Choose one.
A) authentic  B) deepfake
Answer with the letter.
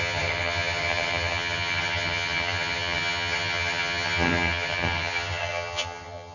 B